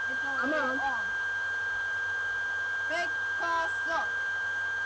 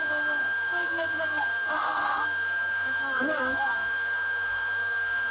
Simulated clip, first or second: second